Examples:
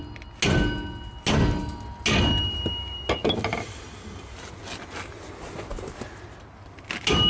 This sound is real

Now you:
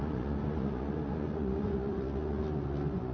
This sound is fake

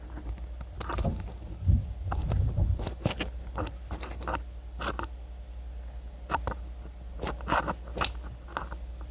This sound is real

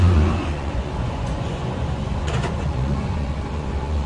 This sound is fake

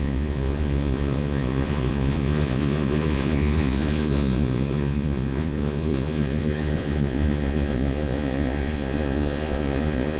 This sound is fake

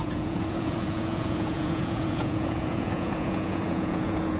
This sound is fake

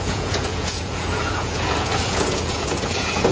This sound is fake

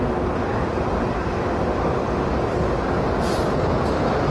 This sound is real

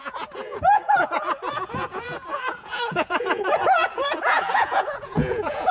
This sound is fake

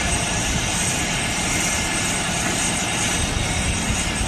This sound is real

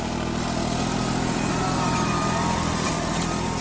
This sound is real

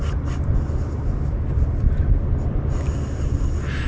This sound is real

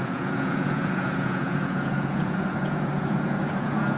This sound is fake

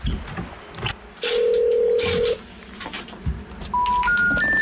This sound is real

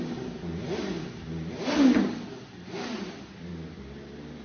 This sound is real